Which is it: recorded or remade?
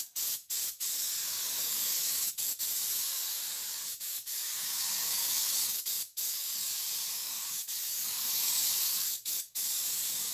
remade